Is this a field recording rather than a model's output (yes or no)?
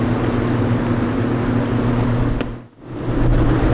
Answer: yes